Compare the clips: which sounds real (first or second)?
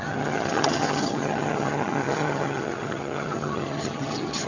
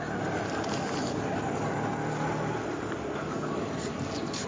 second